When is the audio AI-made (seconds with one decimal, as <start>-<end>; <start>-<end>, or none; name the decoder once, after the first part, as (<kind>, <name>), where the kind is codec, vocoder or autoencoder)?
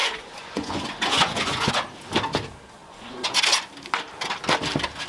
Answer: 0.0-1.7 (vocoder, Vocos); 2.8-3.4